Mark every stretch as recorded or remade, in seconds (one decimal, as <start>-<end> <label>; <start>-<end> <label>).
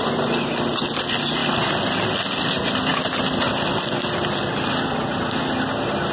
0.0-6.1 recorded